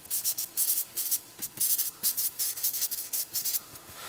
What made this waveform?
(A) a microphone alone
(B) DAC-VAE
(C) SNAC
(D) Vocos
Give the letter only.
B